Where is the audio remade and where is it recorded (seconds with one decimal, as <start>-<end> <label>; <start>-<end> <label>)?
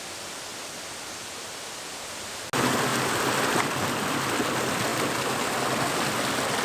0.0-6.6 recorded